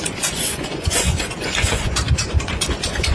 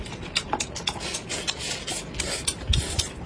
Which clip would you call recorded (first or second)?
second